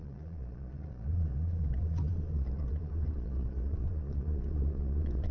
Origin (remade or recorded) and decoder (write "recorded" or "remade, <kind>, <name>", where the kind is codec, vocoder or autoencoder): remade, vocoder, Vocos